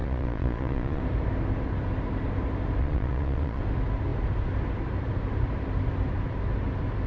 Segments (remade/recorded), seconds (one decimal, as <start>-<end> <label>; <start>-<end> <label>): 0.0-1.0 remade; 1.0-2.8 recorded; 2.8-3.6 remade; 3.6-7.1 recorded